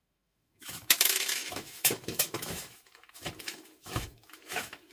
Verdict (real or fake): fake